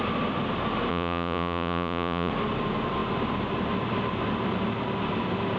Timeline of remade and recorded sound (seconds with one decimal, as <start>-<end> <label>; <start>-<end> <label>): 0.0-0.9 recorded; 0.9-2.3 remade; 2.3-5.6 recorded